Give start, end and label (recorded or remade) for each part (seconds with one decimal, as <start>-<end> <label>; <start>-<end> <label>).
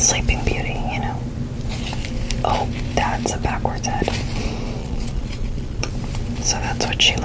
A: 0.0-4.8 recorded; 4.8-5.9 remade; 5.9-7.2 recorded